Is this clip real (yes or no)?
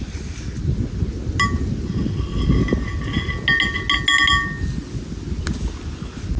yes